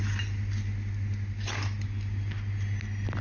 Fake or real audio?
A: real